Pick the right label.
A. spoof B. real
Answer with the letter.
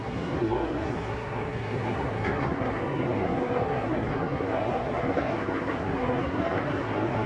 A